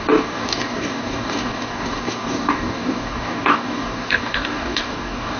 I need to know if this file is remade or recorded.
remade